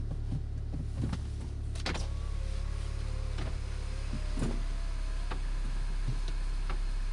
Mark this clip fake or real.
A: real